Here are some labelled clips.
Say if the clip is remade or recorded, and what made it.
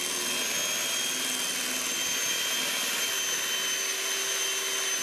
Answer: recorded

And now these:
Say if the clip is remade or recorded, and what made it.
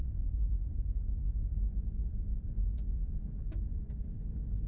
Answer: remade, vocoder, BigVGAN v2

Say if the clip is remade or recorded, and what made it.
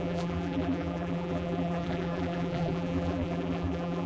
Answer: remade, vocoder, BigVGAN v2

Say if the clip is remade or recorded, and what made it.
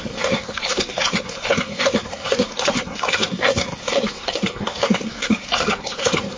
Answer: remade, codec, SNAC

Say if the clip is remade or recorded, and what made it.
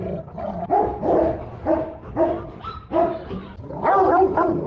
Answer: recorded